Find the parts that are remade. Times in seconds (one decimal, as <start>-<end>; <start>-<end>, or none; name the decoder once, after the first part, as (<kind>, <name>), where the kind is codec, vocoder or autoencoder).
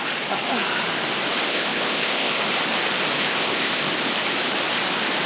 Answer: 1.5-2.4 (codec, ZipCodec); 3.2-3.9